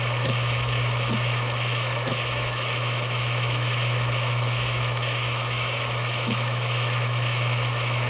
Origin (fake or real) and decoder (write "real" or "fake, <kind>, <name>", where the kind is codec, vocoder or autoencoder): fake, autoencoder, DAC-VAE